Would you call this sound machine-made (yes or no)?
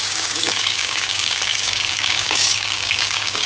yes